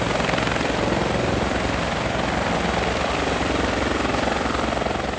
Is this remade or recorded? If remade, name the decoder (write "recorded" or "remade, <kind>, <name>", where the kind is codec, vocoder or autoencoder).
remade, vocoder, BigVGAN v2